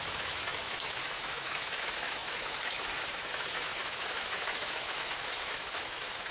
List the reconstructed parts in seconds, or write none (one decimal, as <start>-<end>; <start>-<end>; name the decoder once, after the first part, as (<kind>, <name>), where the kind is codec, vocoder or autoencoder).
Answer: 0.0-6.3 (autoencoder, DAC-VAE)